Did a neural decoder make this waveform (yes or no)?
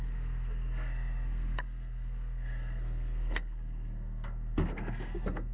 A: yes